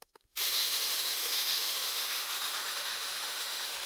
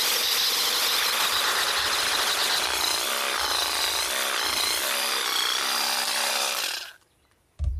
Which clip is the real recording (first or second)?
second